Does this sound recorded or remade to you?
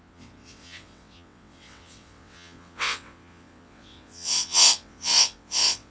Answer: remade